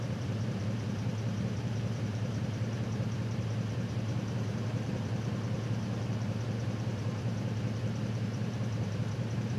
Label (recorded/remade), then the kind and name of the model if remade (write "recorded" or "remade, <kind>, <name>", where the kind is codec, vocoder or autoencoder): remade, vocoder, BigVGAN v2